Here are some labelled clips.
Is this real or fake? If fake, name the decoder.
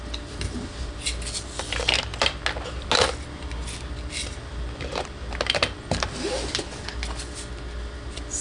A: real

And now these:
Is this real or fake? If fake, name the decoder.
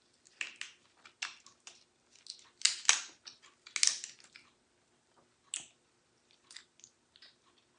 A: real